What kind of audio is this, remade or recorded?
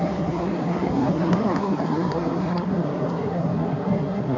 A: remade